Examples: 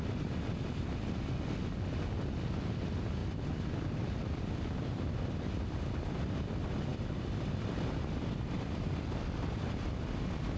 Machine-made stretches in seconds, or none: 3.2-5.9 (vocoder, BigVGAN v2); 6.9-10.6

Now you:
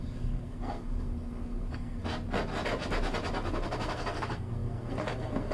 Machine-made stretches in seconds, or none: 0.0-2.0 (codec, SNAC); 3.5-5.5

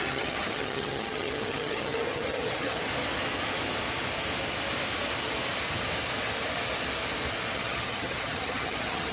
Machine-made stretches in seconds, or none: 0.0-2.9 (vocoder, HiFi-GAN); 7.5-9.1

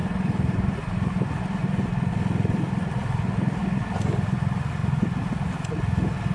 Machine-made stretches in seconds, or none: none

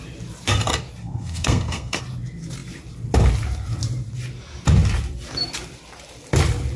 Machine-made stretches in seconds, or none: 1.0-2.0 (codec, SNAC)

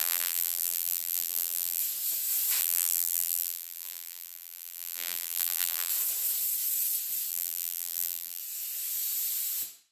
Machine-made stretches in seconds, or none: 0.0-1.8 (vocoder, BigVGAN v2); 2.6-5.9; 7.3-8.4

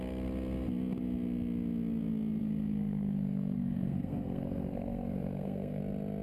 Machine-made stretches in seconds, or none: 2.4-5.8 (codec, SNAC)

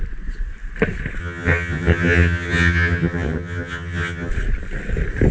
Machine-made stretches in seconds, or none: 1.2-4.3 (vocoder, HiFi-GAN)